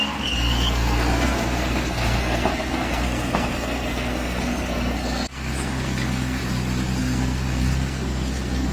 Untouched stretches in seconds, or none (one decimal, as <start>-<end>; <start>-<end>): 6.4-7.0